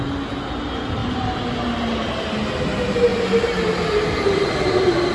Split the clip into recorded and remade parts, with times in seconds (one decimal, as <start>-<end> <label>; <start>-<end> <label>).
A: 0.0-1.0 recorded; 1.0-2.2 remade; 2.2-3.1 recorded; 3.1-5.1 remade